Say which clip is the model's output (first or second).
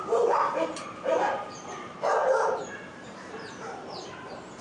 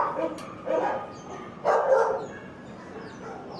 first